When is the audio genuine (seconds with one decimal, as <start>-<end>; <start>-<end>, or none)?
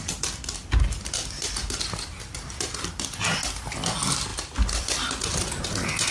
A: 0.0-6.1